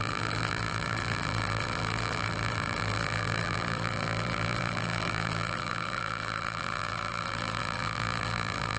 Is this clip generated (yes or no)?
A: yes